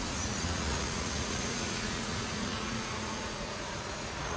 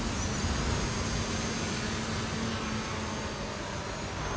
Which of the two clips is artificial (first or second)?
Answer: first